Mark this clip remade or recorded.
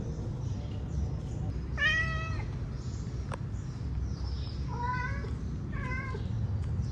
recorded